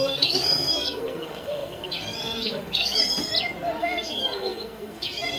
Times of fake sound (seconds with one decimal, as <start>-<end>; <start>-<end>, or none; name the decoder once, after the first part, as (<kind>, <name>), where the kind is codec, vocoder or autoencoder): 0.0-3.3 (codec, SNAC); 3.8-5.4